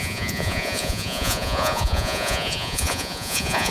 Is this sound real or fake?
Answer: fake